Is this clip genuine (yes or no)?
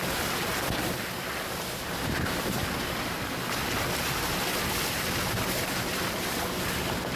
yes